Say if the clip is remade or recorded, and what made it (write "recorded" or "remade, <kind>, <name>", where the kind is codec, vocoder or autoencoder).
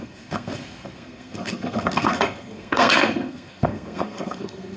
remade, codec, SNAC